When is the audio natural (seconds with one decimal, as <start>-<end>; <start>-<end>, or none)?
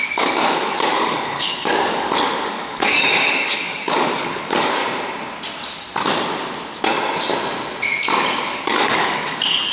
4.8-8.4